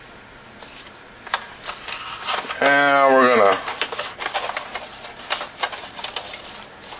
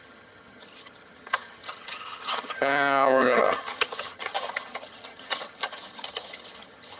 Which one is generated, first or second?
second